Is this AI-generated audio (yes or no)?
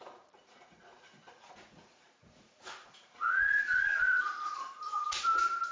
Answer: yes